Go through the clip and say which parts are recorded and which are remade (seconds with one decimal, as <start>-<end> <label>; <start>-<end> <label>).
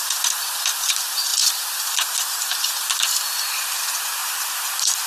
0.0-5.1 recorded